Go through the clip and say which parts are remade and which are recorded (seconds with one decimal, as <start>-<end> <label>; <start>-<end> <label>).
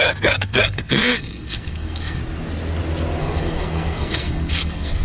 0.0-2.2 remade; 2.2-3.2 recorded; 3.2-5.0 remade